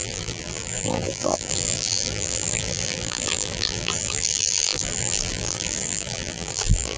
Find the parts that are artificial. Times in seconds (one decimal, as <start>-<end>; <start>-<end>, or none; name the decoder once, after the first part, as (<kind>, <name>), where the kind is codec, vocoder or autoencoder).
0.0-7.0 (vocoder, BigVGAN v2)